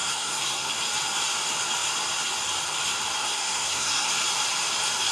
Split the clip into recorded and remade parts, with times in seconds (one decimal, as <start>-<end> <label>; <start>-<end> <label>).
0.0-0.7 remade; 0.7-3.2 recorded; 3.2-4.1 remade; 4.1-5.1 recorded